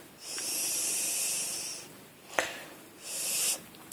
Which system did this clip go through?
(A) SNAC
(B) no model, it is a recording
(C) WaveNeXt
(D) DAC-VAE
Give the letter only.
B